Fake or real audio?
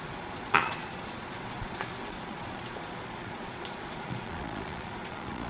fake